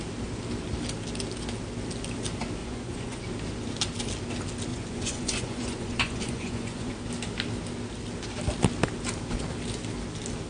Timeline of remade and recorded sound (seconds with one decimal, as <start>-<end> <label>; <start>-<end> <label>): 0.0-2.6 recorded; 2.6-3.2 remade; 3.2-4.7 recorded; 4.7-6.9 remade; 6.9-10.5 recorded